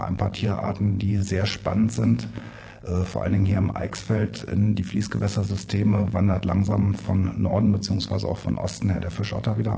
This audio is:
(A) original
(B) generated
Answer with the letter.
B